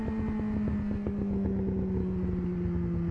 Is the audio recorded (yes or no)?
yes